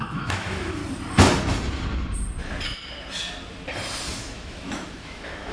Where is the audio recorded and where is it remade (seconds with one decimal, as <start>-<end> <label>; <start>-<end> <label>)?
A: 0.0-0.8 remade; 0.8-4.1 recorded; 4.1-5.5 remade